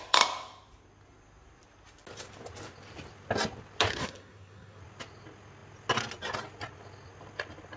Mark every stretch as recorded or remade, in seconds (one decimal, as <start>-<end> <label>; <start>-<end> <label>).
0.0-3.9 recorded; 3.9-4.8 remade; 4.8-7.8 recorded